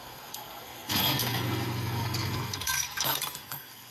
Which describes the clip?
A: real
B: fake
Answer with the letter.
B